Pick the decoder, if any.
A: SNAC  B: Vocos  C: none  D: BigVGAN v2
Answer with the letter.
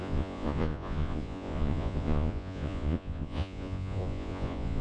B